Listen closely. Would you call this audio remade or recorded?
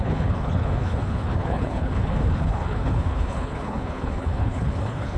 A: remade